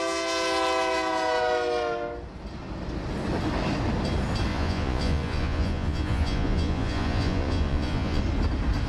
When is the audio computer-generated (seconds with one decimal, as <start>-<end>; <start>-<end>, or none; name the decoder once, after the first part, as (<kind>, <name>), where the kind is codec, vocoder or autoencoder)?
4.5-8.2 (vocoder, Vocos)